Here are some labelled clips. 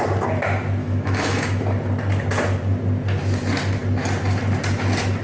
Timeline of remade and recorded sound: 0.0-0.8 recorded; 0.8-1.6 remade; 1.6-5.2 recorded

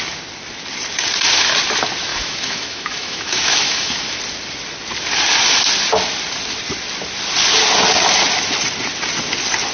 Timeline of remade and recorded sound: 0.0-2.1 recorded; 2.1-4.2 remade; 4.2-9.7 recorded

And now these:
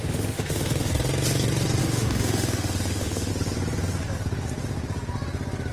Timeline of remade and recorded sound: 0.0-0.9 remade; 0.9-1.8 recorded; 1.8-3.3 remade; 3.3-5.7 recorded